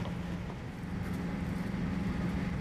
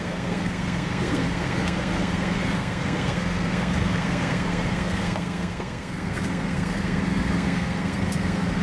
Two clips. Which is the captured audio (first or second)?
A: first